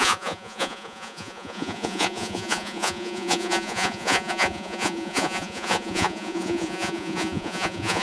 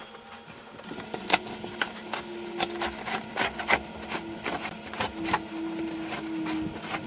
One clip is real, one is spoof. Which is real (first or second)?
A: second